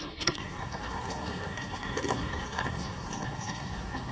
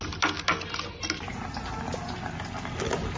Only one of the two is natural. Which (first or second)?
second